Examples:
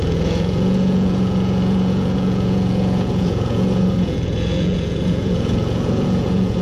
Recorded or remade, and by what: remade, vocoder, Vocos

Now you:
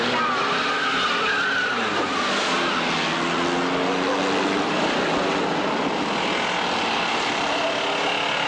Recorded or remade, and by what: recorded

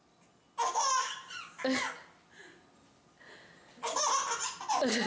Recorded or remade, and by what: recorded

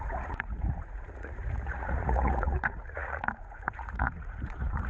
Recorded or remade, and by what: remade, vocoder, Vocos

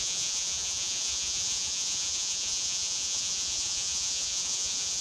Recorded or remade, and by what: remade, vocoder, Vocos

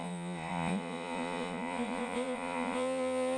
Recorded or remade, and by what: remade, vocoder, Vocos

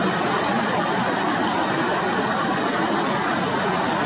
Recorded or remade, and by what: recorded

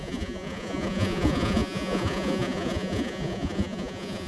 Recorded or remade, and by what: remade, vocoder, Vocos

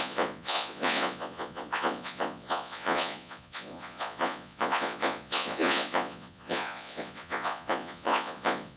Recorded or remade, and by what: remade, vocoder, Vocos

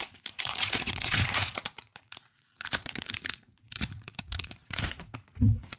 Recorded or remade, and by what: remade, vocoder, Vocos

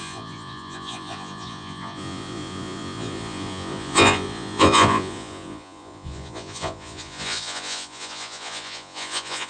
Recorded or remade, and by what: remade, vocoder, Vocos